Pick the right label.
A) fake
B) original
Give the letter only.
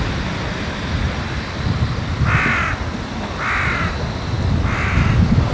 B